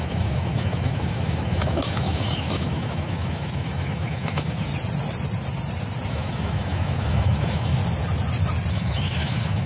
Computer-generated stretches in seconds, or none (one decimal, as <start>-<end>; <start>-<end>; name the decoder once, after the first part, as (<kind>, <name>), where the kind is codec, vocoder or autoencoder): 0.0-4.7 (autoencoder, DAC-VAE); 6.1-7.8; 8.7-9.7